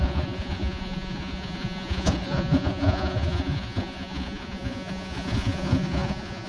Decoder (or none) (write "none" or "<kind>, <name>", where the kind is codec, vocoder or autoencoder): vocoder, Vocos